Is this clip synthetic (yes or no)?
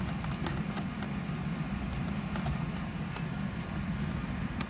no